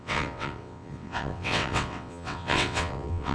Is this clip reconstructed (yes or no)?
yes